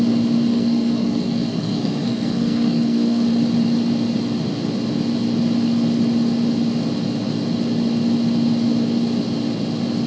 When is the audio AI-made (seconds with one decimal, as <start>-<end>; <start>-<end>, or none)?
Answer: 0.5-3.3